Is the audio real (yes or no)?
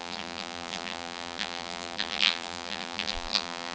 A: no